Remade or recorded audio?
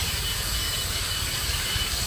remade